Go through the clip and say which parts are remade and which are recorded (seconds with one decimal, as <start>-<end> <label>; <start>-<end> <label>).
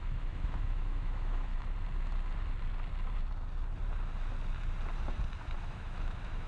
0.0-1.5 remade; 1.5-5.4 recorded; 5.4-6.5 remade